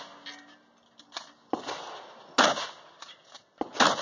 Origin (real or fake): real